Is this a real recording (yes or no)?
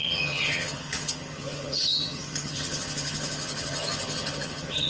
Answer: no